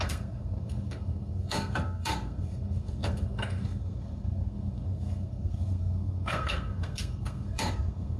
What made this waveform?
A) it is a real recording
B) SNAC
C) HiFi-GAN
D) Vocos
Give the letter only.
B